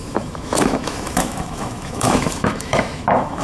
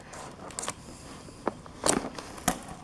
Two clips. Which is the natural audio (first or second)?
second